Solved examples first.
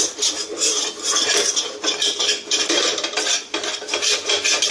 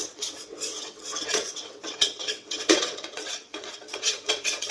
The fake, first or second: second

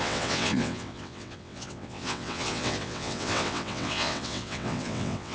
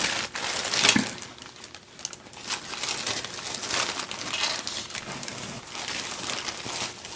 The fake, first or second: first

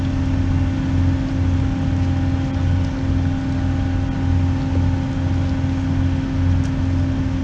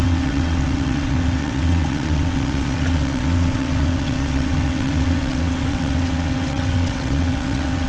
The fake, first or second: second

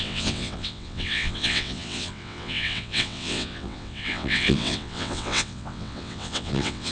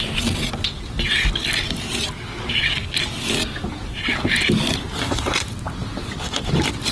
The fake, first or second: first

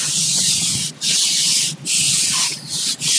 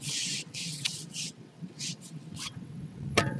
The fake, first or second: second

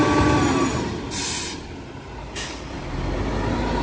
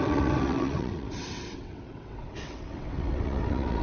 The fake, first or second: second